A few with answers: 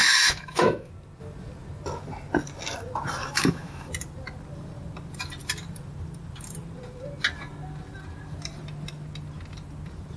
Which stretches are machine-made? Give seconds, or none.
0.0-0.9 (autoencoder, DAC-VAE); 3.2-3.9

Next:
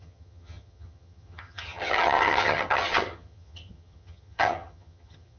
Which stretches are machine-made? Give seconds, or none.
0.0-5.4 (vocoder, HiFi-GAN)

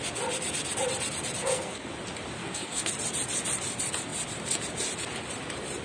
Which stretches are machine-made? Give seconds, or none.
1.4-1.9 (codec, SNAC); 2.4-2.9

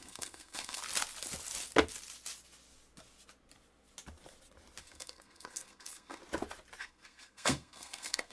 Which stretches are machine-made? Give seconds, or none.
0.0-0.8 (codec, SNAC); 4.8-6.2; 6.8-8.3